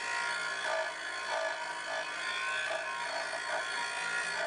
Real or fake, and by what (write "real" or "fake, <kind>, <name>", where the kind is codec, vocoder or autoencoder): real